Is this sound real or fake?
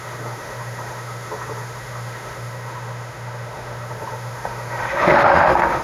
fake